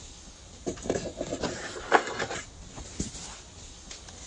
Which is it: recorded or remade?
recorded